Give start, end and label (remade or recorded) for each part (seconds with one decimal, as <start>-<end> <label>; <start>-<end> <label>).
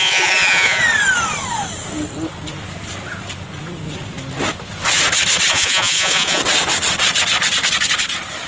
0.0-0.8 remade; 0.8-5.5 recorded; 5.5-6.4 remade; 6.4-8.5 recorded